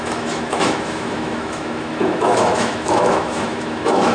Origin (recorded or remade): remade